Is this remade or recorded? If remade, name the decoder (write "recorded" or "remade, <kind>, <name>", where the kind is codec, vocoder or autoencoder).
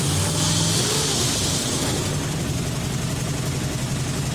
recorded